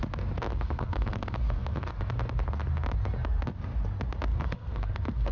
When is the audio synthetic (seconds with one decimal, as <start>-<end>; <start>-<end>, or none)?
0.5-1.9; 4.3-5.3